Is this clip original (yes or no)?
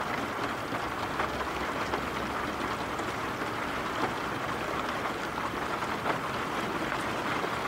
yes